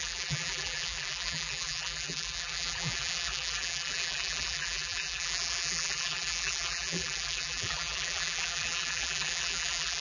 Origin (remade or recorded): remade